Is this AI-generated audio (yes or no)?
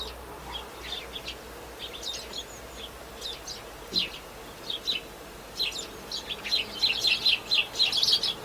no